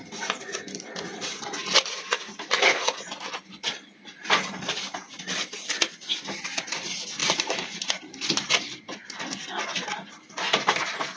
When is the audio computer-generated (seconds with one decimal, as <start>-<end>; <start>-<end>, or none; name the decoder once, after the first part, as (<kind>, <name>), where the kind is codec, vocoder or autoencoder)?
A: 7.2-9.2 (vocoder, BigVGAN v2)